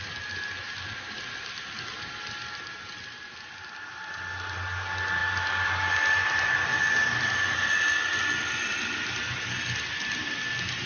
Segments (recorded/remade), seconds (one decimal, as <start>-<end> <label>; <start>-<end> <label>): 0.0-10.9 recorded